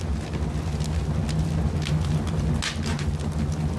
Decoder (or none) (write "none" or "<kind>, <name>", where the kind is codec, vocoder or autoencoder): none